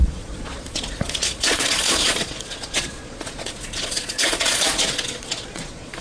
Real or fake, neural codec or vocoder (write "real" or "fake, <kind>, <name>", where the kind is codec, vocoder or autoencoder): fake, vocoder, Vocos